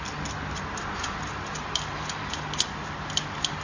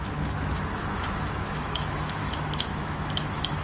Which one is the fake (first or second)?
second